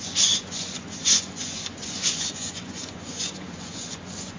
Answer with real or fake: fake